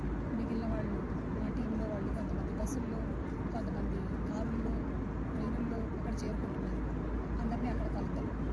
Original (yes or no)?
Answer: yes